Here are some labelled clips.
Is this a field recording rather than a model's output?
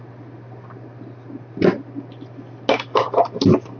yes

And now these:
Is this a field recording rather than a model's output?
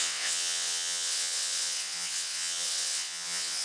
no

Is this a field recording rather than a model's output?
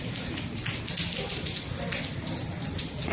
yes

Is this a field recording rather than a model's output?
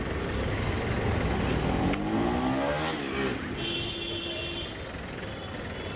yes